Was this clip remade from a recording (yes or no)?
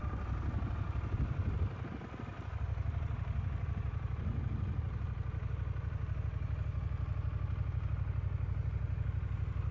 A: no